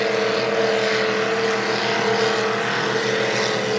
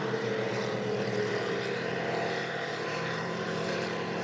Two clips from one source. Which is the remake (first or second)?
second